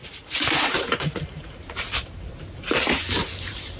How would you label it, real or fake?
fake